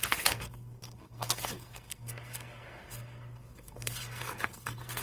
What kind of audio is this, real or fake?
fake